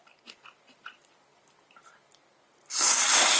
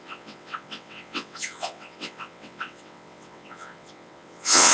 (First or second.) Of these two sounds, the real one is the first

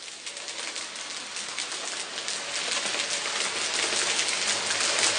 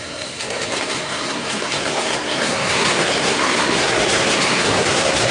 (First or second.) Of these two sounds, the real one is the first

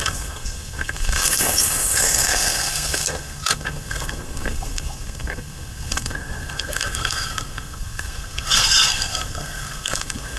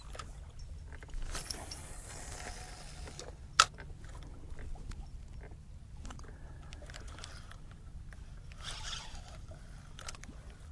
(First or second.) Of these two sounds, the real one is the second